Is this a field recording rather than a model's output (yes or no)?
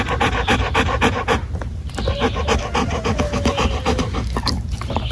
yes